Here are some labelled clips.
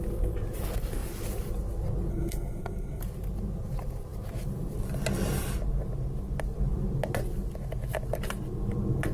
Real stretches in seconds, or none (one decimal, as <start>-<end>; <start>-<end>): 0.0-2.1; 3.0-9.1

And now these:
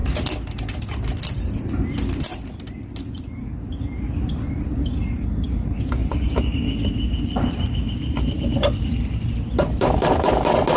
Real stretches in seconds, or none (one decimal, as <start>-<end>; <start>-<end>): 0.0-6.0; 6.6-10.8

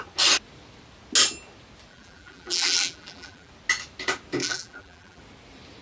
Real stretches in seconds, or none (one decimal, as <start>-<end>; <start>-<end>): 0.0-1.9; 3.5-4.4; 5.2-5.8

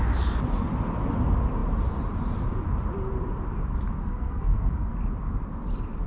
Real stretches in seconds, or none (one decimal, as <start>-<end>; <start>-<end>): 0.0-4.0; 4.9-6.1

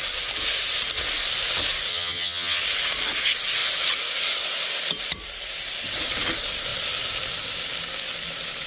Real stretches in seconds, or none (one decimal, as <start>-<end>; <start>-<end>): 0.0-1.9; 2.6-8.7